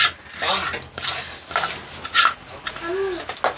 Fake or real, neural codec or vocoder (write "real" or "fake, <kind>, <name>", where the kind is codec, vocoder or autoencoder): real